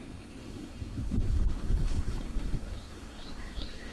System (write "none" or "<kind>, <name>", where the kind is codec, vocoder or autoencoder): codec, SNAC